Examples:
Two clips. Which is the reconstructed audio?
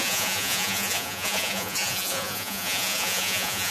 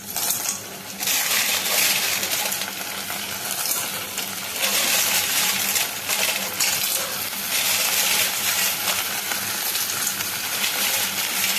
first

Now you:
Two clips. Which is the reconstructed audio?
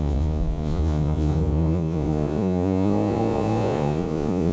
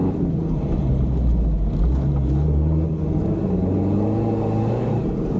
first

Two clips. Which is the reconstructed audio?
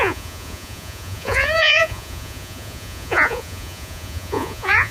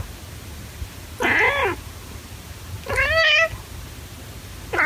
first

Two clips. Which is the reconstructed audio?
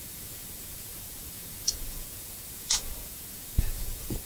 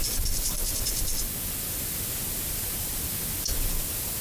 first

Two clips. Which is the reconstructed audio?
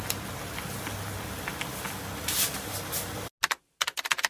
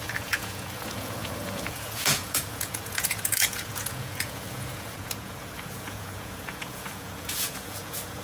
second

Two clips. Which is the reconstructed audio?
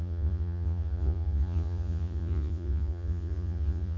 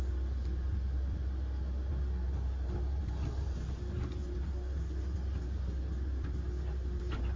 first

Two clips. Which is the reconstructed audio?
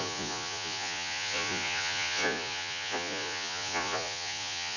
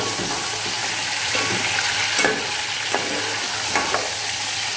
first